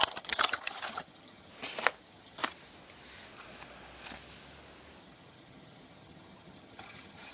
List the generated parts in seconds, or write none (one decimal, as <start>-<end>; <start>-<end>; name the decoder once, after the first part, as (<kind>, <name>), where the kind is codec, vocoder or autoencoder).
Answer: 0.0-1.5 (vocoder, HiFi-GAN); 2.0-2.4; 5.0-7.3